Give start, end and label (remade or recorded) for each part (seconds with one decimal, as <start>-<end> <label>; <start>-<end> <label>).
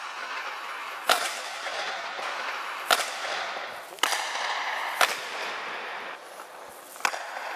0.0-0.8 recorded; 0.8-1.9 remade; 1.9-5.9 recorded; 5.9-6.7 remade; 6.7-7.6 recorded